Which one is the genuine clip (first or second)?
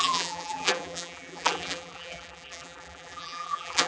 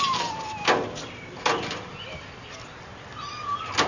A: second